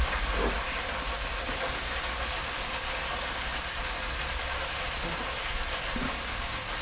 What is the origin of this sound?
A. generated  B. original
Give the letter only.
B